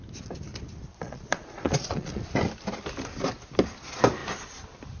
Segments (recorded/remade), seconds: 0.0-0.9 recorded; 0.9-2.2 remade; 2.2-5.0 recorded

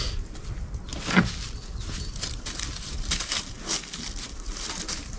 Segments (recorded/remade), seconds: 0.0-5.2 recorded

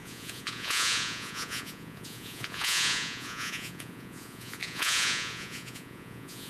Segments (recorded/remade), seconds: 0.0-6.5 remade